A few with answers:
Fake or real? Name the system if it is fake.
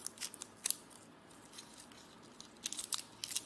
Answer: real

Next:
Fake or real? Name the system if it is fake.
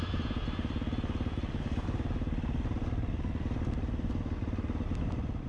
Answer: real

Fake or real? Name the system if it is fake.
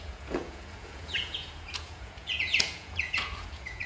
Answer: fake, vocoder, Vocos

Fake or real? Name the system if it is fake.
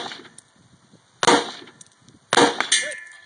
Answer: real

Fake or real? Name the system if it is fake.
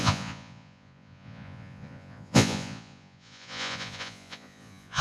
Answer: fake, vocoder, Vocos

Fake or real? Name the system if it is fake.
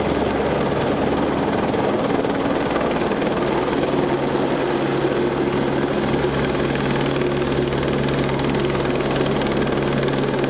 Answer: real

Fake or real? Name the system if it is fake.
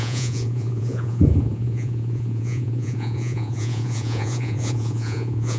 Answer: fake, vocoder, Vocos